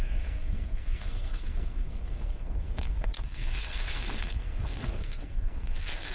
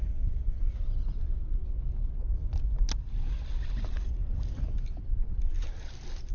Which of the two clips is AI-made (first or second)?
first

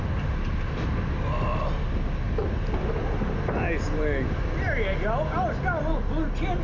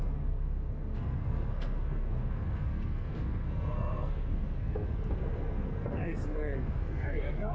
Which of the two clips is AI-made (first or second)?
second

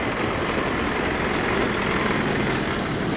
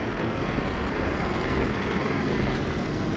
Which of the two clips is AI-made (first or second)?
second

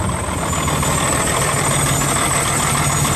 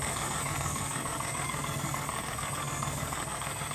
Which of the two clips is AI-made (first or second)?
second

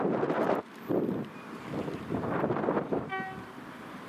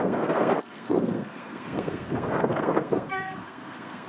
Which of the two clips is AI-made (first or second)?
second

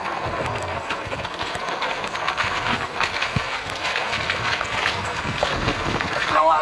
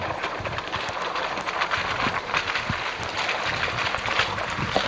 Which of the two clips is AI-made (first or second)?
first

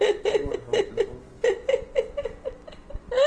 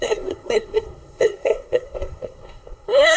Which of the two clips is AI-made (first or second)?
second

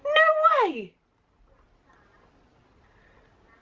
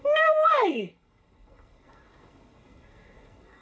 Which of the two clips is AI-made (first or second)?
second